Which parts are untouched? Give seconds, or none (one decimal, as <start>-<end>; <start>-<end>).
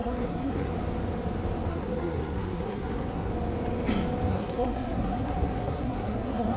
0.7-1.7; 3.3-4.3